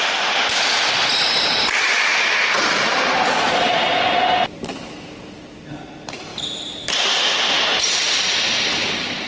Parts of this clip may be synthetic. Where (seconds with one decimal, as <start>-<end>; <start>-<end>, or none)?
none